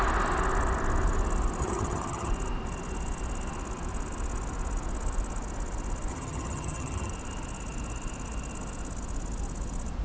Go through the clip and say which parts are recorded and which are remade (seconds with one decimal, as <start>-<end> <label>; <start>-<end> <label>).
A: 0.0-1.6 recorded; 1.6-2.3 remade; 2.3-6.1 recorded; 6.1-7.1 remade; 7.1-10.0 recorded